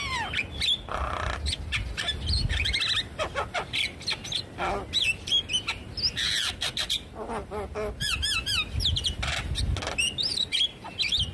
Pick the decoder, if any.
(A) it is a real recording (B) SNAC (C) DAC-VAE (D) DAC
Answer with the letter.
A